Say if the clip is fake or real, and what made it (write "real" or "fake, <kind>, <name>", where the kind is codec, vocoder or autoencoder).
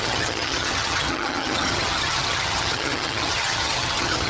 fake, vocoder, HiFi-GAN